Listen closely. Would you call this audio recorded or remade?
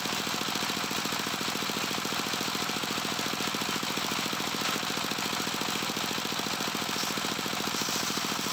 recorded